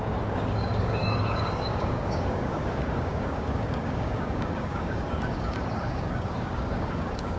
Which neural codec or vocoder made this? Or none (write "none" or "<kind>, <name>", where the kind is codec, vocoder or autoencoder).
codec, DAC